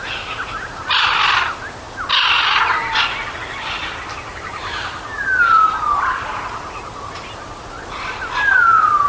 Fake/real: real